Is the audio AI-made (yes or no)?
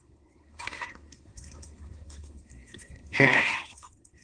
yes